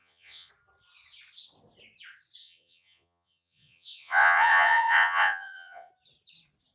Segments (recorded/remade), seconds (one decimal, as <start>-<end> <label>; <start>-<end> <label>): 0.0-0.5 remade; 0.5-2.4 recorded; 2.4-5.9 remade; 5.9-6.7 recorded

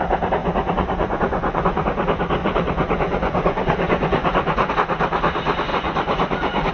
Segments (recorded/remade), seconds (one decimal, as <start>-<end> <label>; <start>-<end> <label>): 0.0-0.4 recorded; 0.4-1.8 remade; 1.8-2.4 recorded; 2.4-4.7 remade; 4.7-5.7 recorded; 5.7-6.7 remade

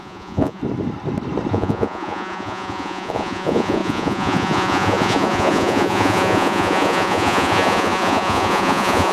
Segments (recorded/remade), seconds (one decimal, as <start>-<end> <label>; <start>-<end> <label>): 0.0-0.6 remade; 0.6-1.5 recorded; 1.5-9.1 remade

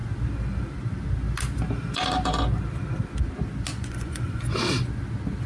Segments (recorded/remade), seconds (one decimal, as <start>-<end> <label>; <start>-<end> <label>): 0.0-3.7 recorded; 3.7-4.4 remade; 4.4-5.5 recorded

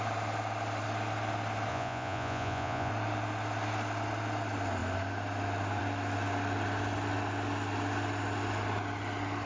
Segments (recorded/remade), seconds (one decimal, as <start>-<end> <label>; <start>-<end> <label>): 0.0-1.7 recorded; 1.7-2.9 remade; 2.9-9.5 recorded

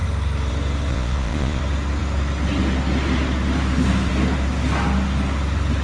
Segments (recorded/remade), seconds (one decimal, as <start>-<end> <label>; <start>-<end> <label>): 0.0-0.9 recorded; 0.9-1.6 remade; 1.6-5.8 recorded

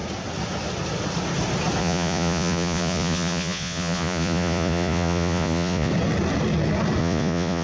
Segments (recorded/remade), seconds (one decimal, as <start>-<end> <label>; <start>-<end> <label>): 0.0-1.8 recorded; 1.8-5.9 remade; 5.9-7.0 recorded; 7.0-7.6 remade